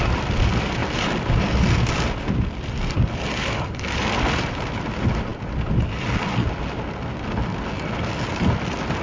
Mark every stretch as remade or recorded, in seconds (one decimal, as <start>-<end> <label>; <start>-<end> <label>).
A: 0.0-0.8 recorded; 0.8-4.5 remade; 4.5-9.0 recorded